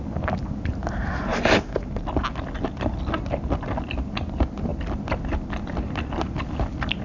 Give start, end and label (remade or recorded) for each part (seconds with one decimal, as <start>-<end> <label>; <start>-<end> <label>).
0.0-7.0 recorded